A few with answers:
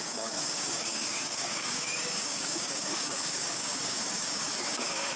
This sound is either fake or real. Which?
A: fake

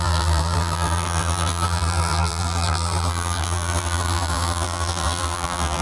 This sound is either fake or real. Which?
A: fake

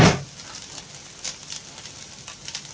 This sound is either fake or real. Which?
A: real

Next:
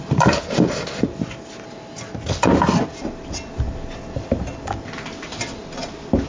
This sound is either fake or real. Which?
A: real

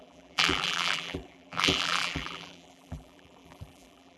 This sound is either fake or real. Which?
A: fake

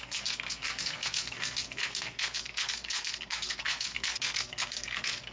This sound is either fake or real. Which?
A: fake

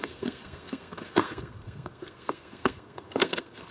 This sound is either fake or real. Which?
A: fake